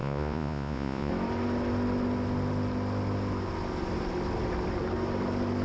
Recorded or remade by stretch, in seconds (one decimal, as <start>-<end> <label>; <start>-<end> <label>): 0.0-1.1 remade; 1.1-5.6 recorded